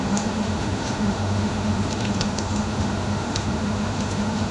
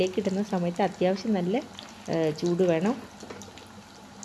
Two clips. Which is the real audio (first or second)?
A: second